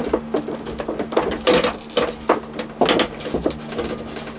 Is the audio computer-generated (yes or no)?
no